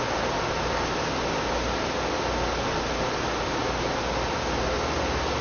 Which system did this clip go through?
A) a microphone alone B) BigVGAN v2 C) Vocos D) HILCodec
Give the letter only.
A